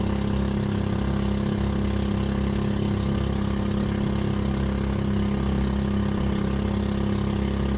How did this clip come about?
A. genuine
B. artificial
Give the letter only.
A